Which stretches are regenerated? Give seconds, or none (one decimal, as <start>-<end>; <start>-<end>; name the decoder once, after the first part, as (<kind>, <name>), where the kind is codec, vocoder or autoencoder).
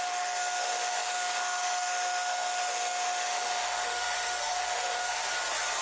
0.0-5.2 (autoencoder, DAC-VAE)